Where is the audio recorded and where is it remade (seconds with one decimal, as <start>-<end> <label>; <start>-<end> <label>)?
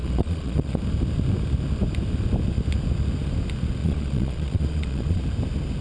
0.0-0.8 remade; 0.8-3.8 recorded; 3.8-5.2 remade; 5.2-5.8 recorded